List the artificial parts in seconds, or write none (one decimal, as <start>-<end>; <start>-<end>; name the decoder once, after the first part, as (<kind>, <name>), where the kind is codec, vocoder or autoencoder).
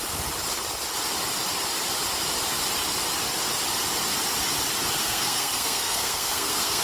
5.0-6.8 (codec, SNAC)